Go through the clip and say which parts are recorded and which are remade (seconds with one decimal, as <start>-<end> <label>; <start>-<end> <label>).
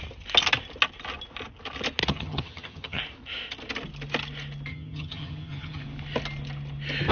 0.0-2.0 recorded; 2.0-3.0 remade; 3.0-4.7 recorded; 4.7-5.8 remade; 5.8-7.1 recorded